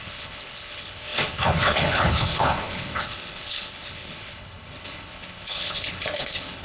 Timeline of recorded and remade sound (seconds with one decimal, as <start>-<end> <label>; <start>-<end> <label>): 0.0-6.6 remade